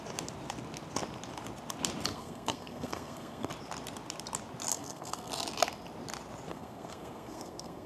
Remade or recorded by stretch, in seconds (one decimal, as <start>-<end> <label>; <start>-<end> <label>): 0.0-2.1 recorded; 2.1-3.5 remade; 3.5-4.7 recorded; 4.7-5.3 remade; 5.3-6.5 recorded; 6.5-7.9 remade